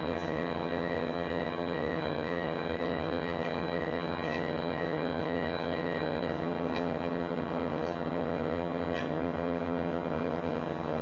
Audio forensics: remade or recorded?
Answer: remade